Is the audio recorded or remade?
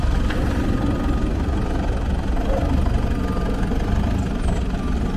recorded